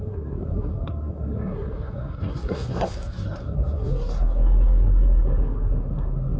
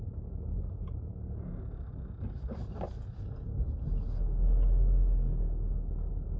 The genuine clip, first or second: second